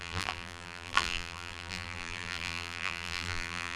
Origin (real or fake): fake